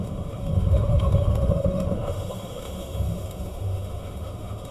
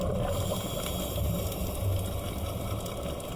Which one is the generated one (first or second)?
first